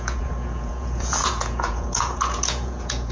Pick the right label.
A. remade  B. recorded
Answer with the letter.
A